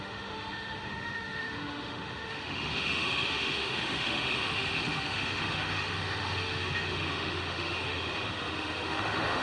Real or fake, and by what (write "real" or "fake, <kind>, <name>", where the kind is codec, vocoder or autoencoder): fake, autoencoder, DAC-VAE